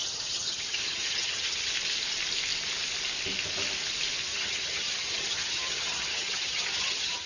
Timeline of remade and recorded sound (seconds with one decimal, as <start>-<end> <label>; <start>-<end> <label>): 0.0-1.7 remade; 1.7-4.3 recorded; 4.3-7.3 remade